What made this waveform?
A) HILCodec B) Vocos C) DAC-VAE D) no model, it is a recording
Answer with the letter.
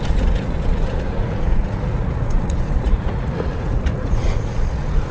B